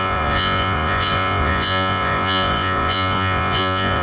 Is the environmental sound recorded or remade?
remade